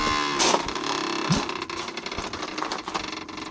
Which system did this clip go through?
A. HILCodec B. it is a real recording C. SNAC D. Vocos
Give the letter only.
B